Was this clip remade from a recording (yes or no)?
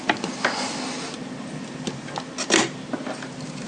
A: no